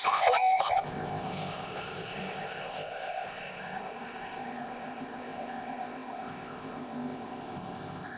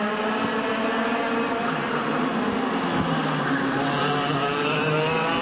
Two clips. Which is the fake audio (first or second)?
first